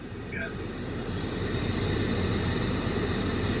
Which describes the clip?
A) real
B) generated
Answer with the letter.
A